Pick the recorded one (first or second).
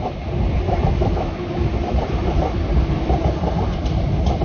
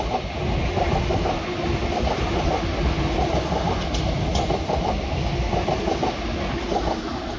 second